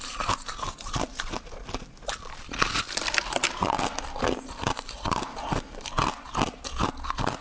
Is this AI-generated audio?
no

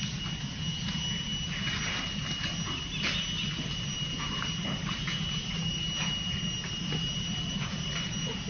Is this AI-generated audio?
no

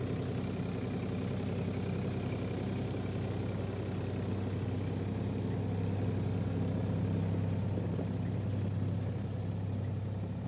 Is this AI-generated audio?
no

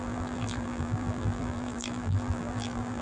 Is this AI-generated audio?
yes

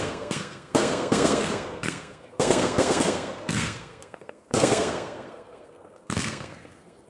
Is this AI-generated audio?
yes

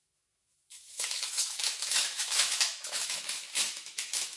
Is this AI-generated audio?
yes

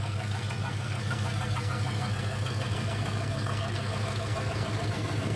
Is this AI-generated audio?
yes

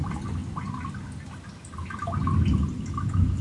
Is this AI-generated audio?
no